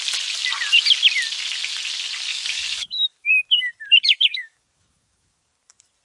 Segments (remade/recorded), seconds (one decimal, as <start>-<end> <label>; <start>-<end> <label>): 0.0-2.3 recorded; 2.3-3.3 remade; 3.3-4.3 recorded; 4.3-5.5 remade; 5.5-6.0 recorded